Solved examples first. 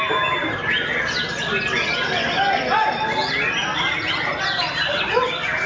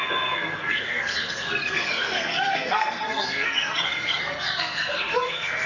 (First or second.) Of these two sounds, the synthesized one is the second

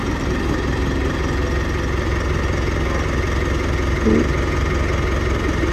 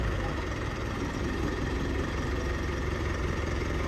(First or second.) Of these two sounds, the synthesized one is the second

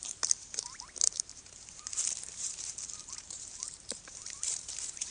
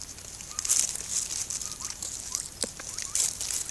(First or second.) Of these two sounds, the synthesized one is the first